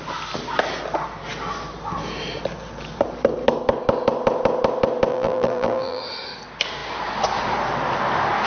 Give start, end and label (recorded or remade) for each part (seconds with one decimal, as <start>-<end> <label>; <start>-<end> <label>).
0.0-5.1 recorded; 5.1-6.0 remade; 6.0-8.5 recorded